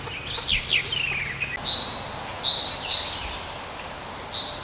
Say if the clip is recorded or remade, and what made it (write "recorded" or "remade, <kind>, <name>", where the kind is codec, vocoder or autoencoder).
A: recorded